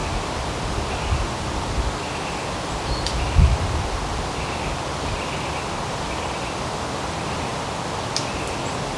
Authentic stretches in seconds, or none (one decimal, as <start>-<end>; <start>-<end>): 0.0-9.0